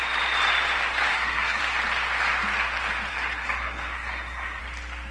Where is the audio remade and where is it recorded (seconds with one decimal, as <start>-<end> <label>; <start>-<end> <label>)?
0.0-1.1 recorded; 1.1-1.6 remade; 1.6-3.1 recorded; 3.1-4.6 remade; 4.6-5.1 recorded